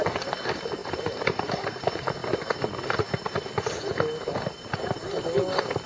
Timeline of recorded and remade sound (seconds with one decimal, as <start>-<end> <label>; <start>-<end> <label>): 0.0-0.8 recorded; 0.8-1.8 remade; 1.8-5.9 recorded